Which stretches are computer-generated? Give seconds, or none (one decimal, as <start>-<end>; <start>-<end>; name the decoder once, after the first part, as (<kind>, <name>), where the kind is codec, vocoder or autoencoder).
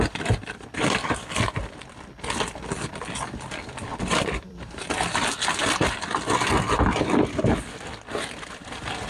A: 3.9-4.9 (vocoder, BigVGAN v2)